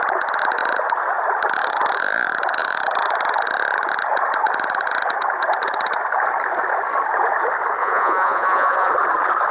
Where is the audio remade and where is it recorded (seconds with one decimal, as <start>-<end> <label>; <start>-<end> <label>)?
0.0-7.8 recorded; 7.8-8.9 remade; 8.9-9.5 recorded